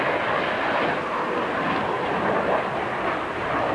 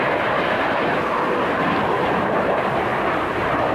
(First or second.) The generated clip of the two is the second